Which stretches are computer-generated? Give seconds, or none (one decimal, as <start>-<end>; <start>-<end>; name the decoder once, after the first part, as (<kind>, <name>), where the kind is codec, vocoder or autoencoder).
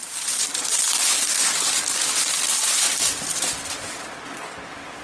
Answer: 0.0-2.5 (vocoder, BigVGAN v2)